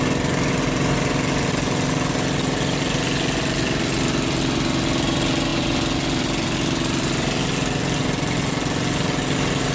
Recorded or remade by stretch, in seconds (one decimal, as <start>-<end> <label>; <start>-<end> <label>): 0.0-9.7 recorded